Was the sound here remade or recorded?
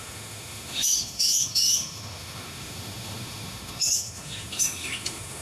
remade